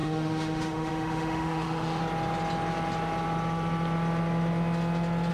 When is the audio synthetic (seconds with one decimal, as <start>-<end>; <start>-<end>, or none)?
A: 0.0-2.0